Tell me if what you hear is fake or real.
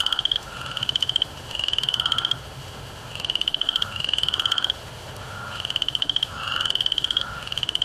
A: fake